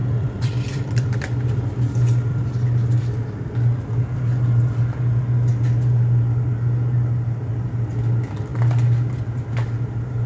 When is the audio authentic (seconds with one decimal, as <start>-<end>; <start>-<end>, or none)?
1.9-2.3; 3.0-10.3